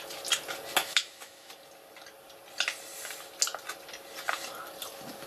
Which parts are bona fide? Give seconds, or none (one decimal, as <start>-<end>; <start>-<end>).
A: 0.0-0.8; 1.5-5.3